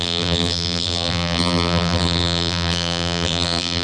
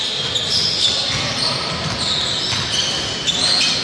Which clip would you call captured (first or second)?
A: second